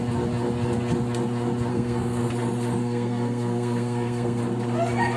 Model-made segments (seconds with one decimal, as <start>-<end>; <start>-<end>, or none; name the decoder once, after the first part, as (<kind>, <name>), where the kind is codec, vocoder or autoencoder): 1.7-2.3 (codec, SNAC); 2.8-4.4

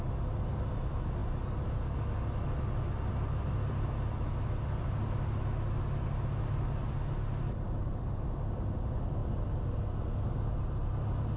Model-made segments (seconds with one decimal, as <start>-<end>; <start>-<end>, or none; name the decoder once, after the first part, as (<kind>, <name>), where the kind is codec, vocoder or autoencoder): none

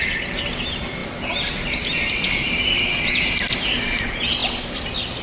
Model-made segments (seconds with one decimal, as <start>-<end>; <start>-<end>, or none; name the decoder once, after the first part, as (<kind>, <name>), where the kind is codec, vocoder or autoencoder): none

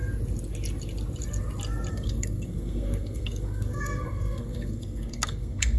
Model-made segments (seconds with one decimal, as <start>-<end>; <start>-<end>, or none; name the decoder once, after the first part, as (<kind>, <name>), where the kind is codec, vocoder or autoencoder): 1.9-5.8 (codec, SNAC)

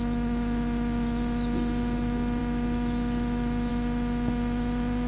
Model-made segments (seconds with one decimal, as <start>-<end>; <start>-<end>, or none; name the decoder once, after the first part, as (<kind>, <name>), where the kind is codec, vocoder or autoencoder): none